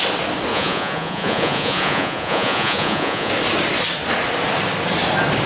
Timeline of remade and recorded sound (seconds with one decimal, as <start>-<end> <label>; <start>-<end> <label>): 0.0-0.5 recorded; 0.5-3.3 remade; 3.3-5.5 recorded